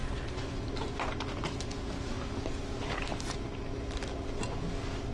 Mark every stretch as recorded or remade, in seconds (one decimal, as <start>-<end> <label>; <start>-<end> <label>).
0.0-5.1 recorded